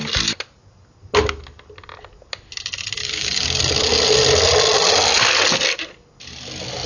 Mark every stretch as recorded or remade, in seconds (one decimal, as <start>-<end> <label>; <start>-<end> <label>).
0.0-3.0 recorded; 3.0-3.6 remade; 3.6-6.9 recorded